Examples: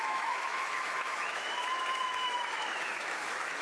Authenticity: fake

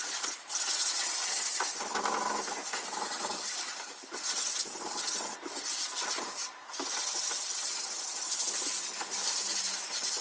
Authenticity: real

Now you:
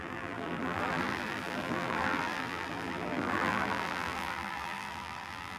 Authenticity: fake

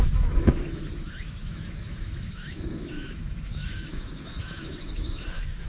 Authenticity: fake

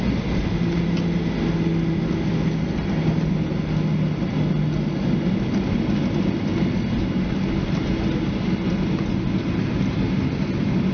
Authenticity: real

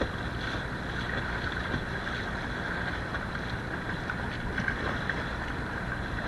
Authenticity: real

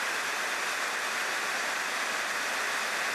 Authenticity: real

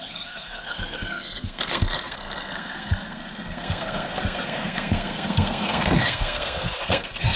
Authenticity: fake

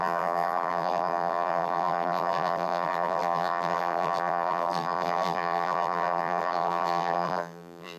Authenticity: fake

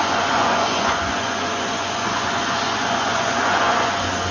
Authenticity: fake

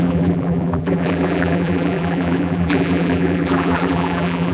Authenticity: fake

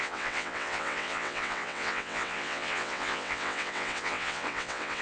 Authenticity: fake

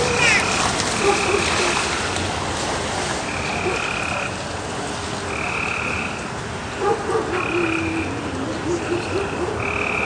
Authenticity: real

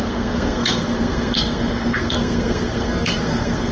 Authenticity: fake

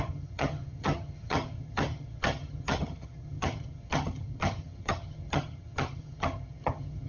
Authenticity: fake